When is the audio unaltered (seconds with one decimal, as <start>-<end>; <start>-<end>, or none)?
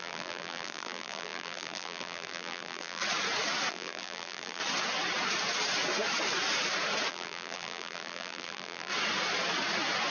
3.0-3.7; 4.6-7.1; 8.9-10.1